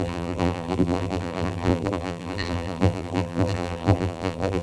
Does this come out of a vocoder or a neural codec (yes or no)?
yes